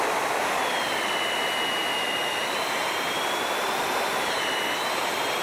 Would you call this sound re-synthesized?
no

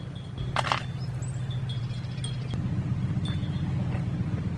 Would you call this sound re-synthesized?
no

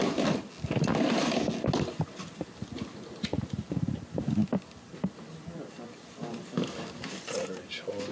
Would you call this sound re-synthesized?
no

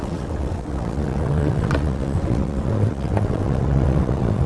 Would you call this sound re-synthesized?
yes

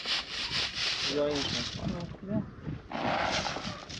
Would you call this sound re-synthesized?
no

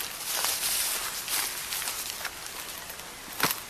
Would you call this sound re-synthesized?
no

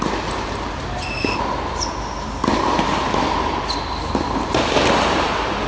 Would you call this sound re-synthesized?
no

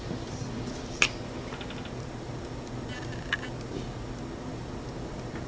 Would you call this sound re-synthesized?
no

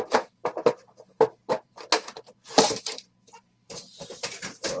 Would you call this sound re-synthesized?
no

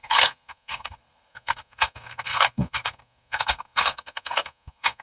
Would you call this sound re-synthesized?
yes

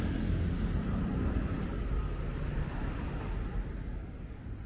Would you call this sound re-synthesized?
no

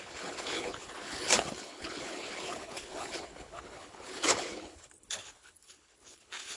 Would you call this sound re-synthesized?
yes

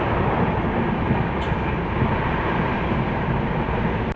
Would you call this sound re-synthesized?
no